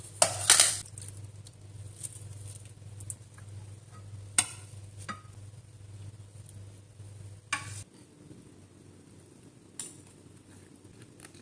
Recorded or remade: recorded